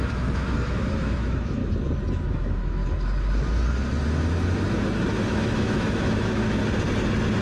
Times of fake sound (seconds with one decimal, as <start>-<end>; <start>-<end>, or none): 0.0-1.6; 2.3-2.8; 5.3-6.6